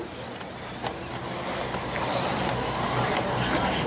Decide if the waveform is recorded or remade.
recorded